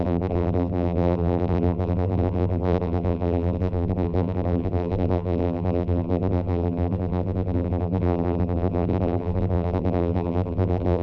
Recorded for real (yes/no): no